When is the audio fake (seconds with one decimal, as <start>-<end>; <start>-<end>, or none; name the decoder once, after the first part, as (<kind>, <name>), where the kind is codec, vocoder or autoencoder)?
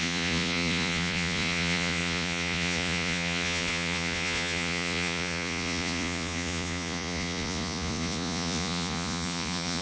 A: 0.0-9.8 (vocoder, Vocos)